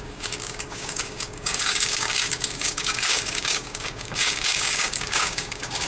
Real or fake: fake